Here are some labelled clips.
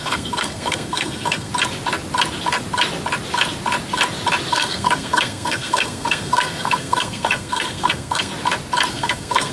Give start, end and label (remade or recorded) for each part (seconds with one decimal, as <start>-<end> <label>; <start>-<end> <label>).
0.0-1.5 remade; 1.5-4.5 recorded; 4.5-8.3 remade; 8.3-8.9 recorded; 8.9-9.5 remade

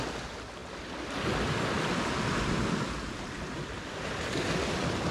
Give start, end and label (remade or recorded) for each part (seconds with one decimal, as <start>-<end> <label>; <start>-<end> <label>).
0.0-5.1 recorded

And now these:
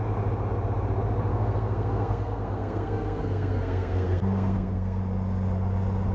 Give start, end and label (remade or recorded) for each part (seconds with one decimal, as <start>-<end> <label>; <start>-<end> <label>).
0.0-1.3 recorded; 1.3-5.0 remade; 5.0-6.1 recorded